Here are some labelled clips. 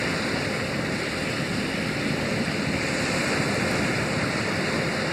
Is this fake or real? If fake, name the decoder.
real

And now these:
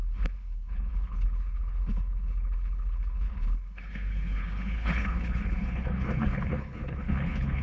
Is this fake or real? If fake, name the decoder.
fake, codec, HILCodec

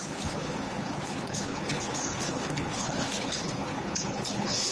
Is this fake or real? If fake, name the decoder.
fake, codec, HILCodec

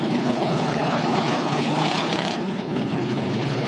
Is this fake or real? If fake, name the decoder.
fake, codec, HILCodec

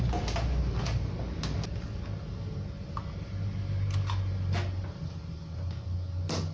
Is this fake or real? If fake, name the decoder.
real